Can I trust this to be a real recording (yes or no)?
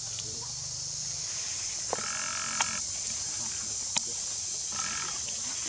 yes